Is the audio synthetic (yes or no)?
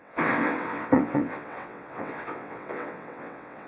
yes